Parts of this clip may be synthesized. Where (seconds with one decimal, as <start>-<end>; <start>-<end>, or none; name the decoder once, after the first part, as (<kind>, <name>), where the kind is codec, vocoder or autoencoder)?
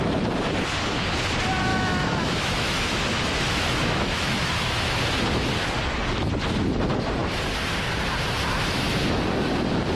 1.7-5.0 (autoencoder, DAC-VAE)